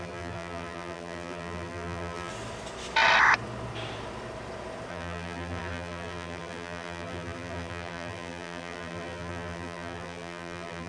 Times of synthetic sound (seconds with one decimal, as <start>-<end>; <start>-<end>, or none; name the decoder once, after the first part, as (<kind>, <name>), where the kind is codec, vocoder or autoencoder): 0.0-2.3 (vocoder, BigVGAN v2); 4.9-10.9